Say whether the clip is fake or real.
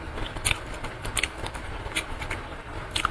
real